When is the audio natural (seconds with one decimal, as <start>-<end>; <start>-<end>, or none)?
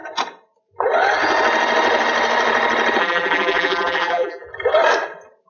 0.0-3.0; 4.5-5.5